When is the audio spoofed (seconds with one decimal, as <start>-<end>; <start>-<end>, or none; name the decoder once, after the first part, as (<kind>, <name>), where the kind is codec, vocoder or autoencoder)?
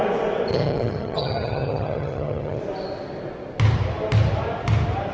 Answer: 0.5-2.6 (vocoder, HiFi-GAN)